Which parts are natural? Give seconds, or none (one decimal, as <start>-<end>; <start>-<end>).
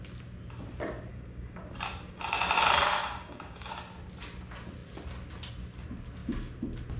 0.0-1.1; 1.6-3.0; 3.7-7.0